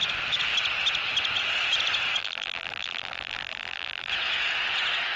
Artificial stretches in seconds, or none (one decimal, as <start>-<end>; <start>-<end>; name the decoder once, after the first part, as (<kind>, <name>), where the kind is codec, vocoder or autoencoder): 2.2-4.1 (vocoder, BigVGAN v2)